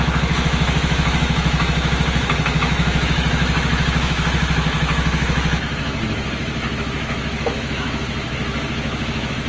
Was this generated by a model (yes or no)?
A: yes